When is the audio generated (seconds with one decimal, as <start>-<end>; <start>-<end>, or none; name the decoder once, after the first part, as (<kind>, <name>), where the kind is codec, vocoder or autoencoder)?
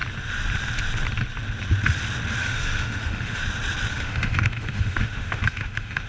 2.4-3.4 (autoencoder, DAC-VAE); 3.9-6.1